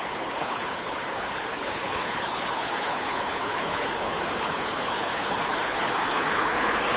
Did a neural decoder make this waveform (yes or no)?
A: yes